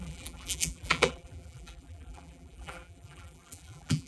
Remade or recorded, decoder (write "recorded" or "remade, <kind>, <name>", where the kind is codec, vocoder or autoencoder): remade, vocoder, BigVGAN v2